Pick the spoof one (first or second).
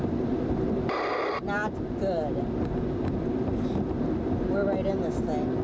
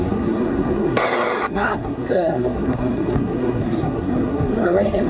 second